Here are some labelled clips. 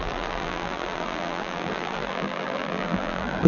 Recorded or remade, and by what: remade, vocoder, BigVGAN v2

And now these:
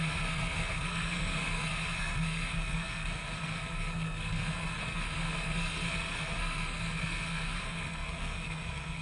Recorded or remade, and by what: remade, codec, SNAC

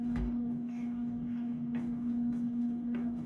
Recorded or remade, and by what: remade, codec, DAC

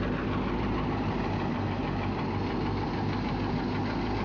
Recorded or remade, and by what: recorded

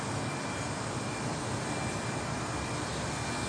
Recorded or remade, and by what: recorded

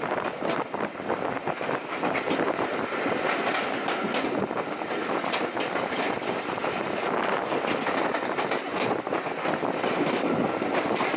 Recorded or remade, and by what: recorded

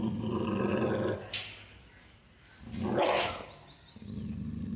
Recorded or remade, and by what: recorded